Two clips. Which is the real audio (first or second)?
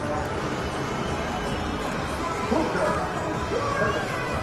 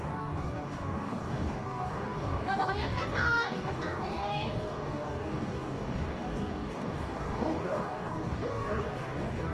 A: first